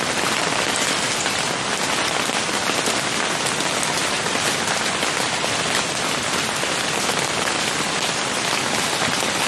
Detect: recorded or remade recorded